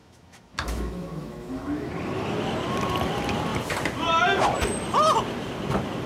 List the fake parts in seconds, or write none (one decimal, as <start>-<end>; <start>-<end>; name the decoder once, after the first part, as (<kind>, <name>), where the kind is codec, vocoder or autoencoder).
0.0-1.9 (autoencoder, DAC-VAE)